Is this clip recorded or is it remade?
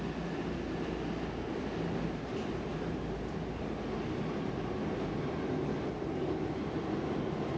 recorded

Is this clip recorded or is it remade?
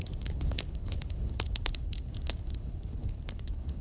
remade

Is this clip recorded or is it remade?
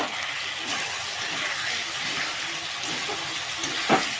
recorded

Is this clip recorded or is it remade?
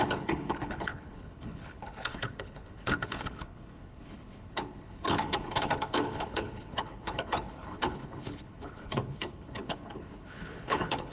remade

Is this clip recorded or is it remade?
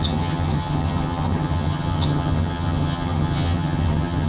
remade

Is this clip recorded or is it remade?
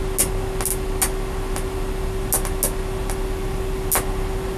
recorded